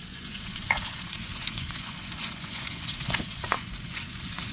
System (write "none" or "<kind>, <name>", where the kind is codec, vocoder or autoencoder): vocoder, Vocos